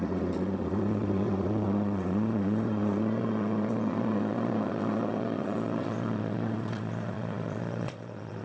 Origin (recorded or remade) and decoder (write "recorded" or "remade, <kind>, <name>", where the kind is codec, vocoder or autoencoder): remade, vocoder, Vocos